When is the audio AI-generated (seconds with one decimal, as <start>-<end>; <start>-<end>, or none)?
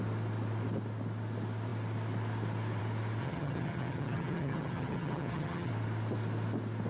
3.2-5.7